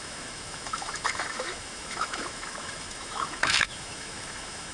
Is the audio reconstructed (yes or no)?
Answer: yes